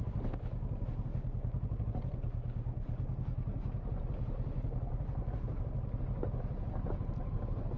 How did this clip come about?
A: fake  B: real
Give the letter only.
B